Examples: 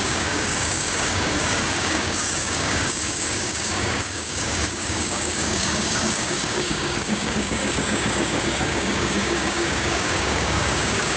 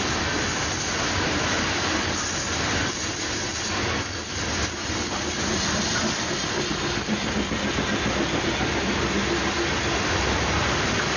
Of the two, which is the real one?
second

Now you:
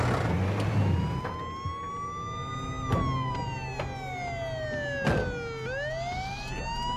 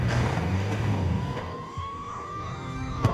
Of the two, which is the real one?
first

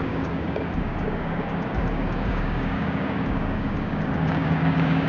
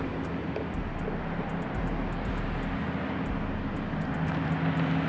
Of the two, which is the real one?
second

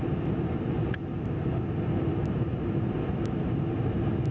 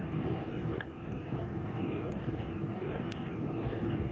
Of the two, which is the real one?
first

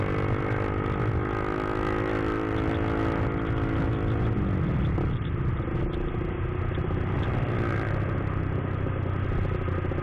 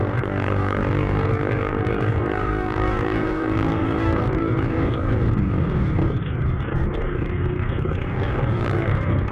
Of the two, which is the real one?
first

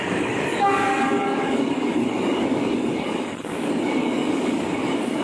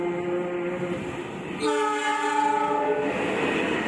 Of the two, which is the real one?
second